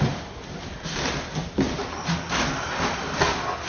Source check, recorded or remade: recorded